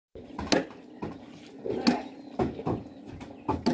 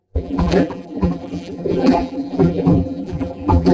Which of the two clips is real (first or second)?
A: first